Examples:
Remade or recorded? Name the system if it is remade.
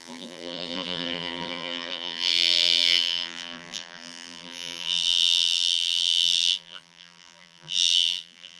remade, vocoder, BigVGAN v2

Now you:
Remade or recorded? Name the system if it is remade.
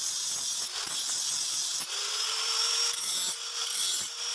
recorded